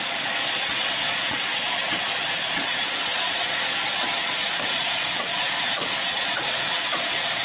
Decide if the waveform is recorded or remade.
remade